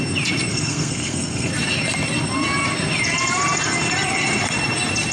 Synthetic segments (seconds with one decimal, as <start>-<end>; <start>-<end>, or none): 0.5-1.5